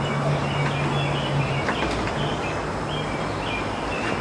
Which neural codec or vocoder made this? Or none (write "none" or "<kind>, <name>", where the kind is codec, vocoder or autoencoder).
none